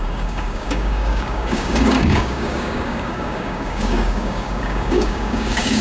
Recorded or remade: remade